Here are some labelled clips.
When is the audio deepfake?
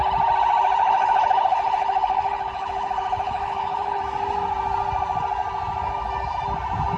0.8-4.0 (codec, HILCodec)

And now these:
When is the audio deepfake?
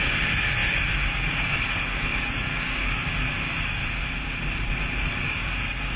0.0-3.8 (codec, DAC); 5.1-6.0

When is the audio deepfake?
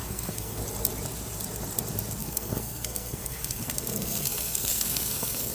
0.0-0.6 (codec, SNAC); 2.2-5.5